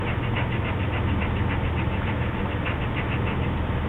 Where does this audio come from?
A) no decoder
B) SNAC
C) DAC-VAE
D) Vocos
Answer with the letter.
A